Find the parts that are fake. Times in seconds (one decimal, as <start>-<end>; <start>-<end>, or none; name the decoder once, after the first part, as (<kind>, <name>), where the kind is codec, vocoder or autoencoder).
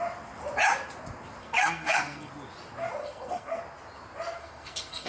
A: 1.4-2.3 (codec, SNAC); 3.0-3.6; 4.4-5.1